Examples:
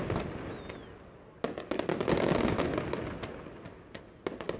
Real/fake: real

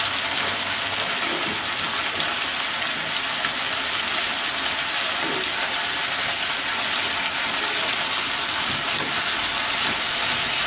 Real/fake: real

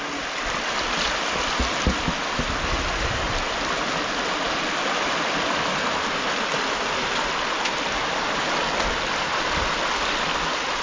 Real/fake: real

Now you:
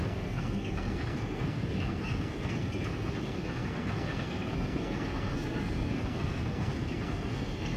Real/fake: fake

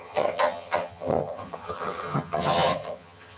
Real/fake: fake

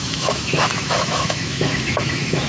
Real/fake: fake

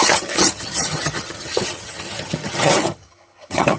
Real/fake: fake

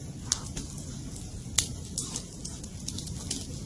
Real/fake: real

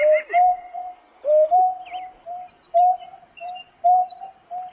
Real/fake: real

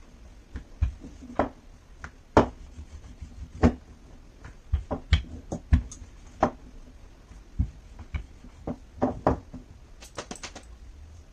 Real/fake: real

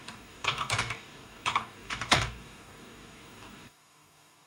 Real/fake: fake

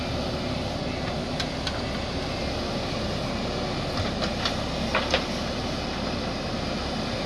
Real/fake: real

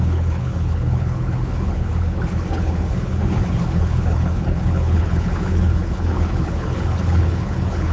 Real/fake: fake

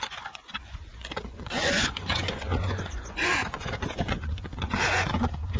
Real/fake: fake